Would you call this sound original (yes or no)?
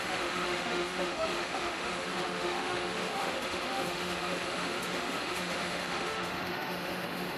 no